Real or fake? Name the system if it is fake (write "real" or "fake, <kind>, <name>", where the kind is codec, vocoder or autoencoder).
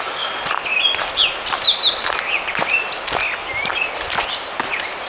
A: real